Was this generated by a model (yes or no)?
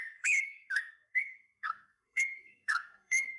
yes